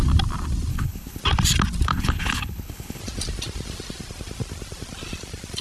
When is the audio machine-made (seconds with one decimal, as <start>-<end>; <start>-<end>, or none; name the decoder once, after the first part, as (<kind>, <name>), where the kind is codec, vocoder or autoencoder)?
0.7-1.2 (codec, HILCodec); 1.9-3.0